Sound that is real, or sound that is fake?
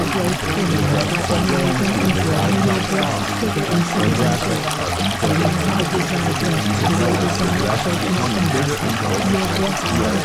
real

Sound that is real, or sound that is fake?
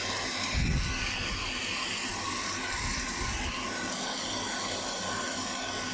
real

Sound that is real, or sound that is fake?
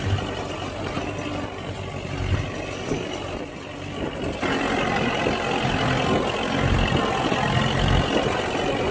real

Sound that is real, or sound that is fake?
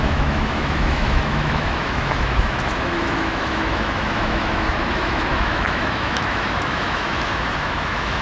fake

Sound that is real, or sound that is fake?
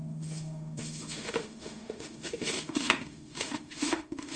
fake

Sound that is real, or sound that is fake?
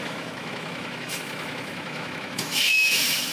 fake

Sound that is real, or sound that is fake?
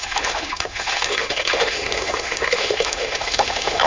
fake